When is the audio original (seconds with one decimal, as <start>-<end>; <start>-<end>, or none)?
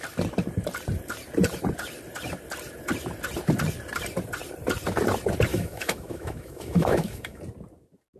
0.0-5.5; 7.4-8.2